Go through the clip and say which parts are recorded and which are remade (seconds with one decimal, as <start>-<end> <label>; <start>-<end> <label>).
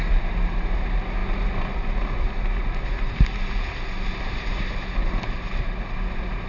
0.0-6.5 recorded